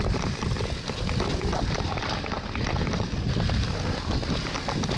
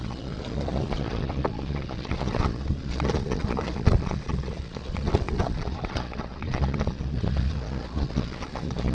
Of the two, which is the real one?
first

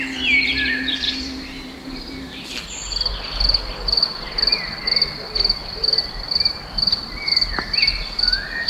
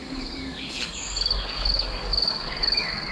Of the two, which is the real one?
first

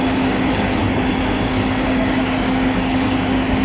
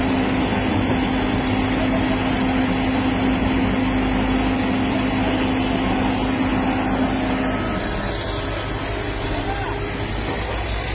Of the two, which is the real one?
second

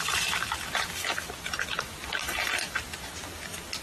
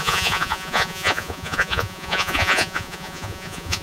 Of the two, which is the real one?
first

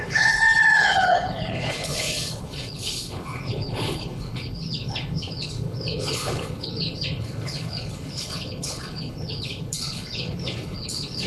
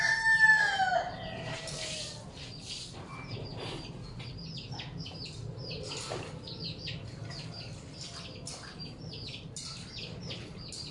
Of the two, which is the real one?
second